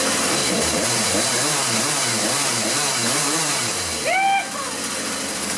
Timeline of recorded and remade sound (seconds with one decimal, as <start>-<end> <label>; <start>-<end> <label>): 0.0-0.4 recorded; 0.4-1.8 remade; 1.8-3.0 recorded; 3.0-3.7 remade; 3.7-5.6 recorded